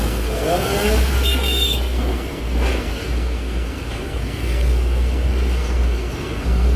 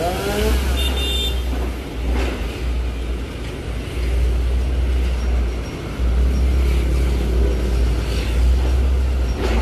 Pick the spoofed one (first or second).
first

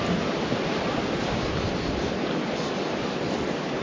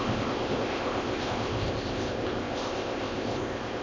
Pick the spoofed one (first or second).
second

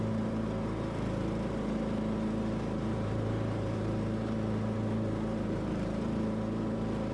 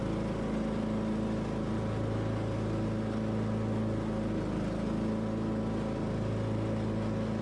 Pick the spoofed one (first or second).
first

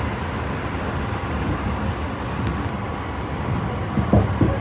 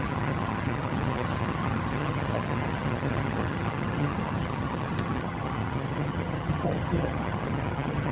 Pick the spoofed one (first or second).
second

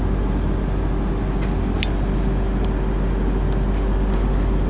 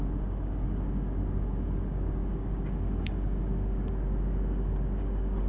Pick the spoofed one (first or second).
second